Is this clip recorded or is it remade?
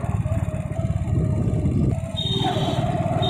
recorded